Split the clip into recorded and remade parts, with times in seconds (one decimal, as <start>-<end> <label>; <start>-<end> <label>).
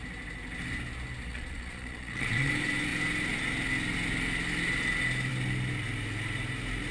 0.0-1.3 recorded; 1.3-2.5 remade; 2.5-6.9 recorded